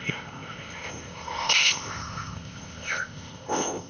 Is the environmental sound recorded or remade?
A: remade